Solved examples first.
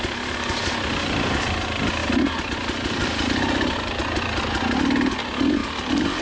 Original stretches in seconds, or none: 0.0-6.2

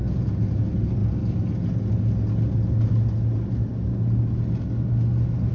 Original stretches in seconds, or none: 0.0-5.5

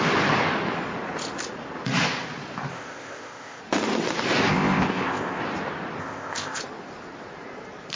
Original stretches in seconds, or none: 0.0-2.7; 3.6-4.5; 5.4-6.0; 6.6-8.0

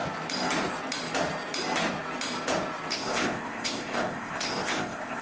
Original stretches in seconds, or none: 0.0-2.9

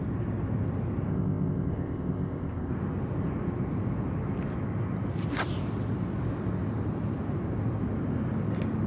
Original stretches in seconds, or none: 0.0-1.1; 2.7-8.9

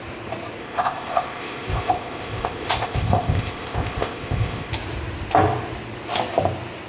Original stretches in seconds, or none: 0.0-0.6; 4.7-6.9

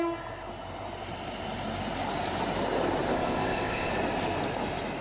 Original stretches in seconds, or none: 0.0-3.1; 3.9-5.0

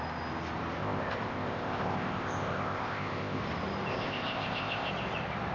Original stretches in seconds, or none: 0.0-0.8; 3.4-3.9; 4.9-5.5